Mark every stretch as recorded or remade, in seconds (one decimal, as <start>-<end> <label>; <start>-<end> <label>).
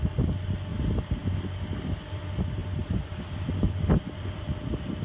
0.0-0.7 recorded; 0.7-2.2 remade; 2.2-2.6 recorded; 2.6-5.0 remade